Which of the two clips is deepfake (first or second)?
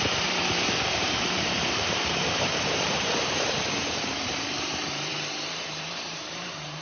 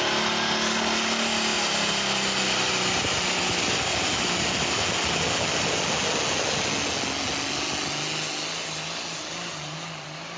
first